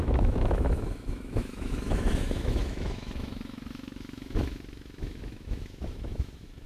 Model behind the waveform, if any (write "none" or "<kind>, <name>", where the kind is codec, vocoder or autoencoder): autoencoder, DAC-VAE